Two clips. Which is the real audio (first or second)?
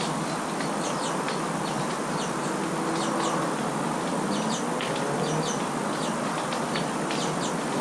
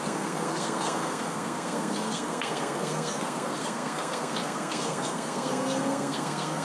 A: first